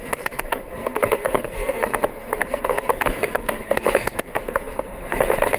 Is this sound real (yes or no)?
no